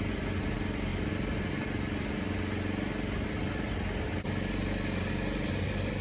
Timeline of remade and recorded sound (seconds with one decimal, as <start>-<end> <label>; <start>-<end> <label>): 0.0-6.0 recorded